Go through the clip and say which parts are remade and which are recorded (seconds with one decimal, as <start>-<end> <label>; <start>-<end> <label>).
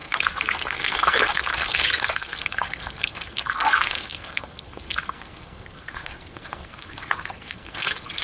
0.0-8.2 remade